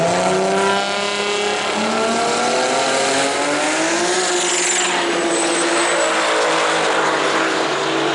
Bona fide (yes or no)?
yes